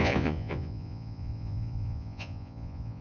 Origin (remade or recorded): remade